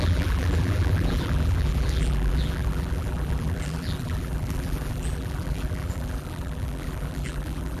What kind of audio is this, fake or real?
fake